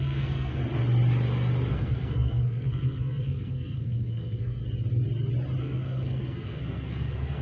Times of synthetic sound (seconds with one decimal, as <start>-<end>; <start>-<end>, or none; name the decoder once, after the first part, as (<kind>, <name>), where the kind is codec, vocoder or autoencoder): 0.0-0.6 (codec, SNAC); 1.7-4.6; 5.6-7.4